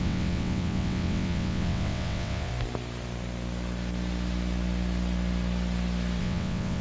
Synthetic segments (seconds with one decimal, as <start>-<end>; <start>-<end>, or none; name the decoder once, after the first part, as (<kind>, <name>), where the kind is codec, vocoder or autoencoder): 0.0-2.5 (vocoder, WaveNeXt); 6.2-6.8